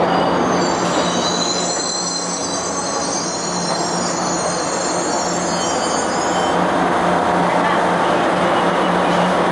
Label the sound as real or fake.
real